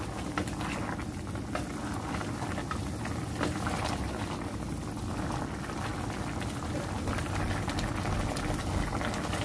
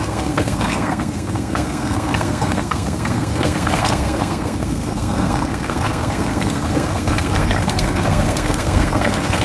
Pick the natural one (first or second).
first